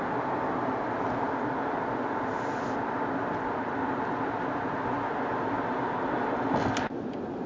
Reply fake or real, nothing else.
real